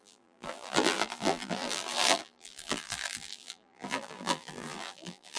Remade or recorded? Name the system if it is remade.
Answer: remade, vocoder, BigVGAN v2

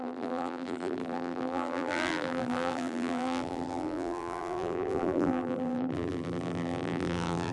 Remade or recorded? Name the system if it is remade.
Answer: remade, vocoder, BigVGAN v2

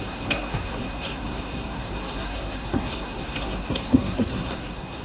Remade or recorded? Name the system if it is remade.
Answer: remade, codec, SNAC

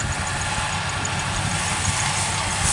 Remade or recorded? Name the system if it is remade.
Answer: recorded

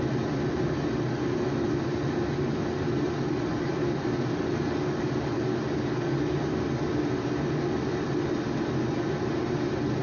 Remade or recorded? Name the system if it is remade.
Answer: recorded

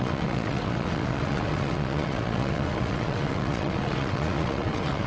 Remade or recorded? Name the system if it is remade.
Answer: remade, vocoder, WaveNeXt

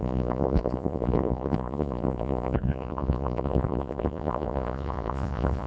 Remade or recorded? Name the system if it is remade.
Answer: remade, vocoder, Vocos